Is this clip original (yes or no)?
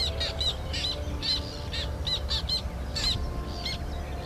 yes